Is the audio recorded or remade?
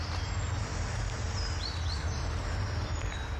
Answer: recorded